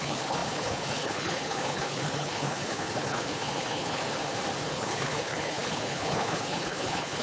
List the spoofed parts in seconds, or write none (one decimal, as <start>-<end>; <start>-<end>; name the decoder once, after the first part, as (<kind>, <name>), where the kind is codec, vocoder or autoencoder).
0.0-4.0 (codec, HILCodec); 4.7-7.2